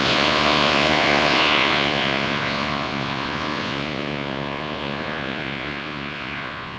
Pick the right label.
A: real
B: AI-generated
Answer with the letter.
B